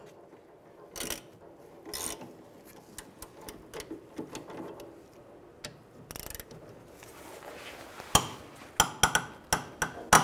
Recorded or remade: recorded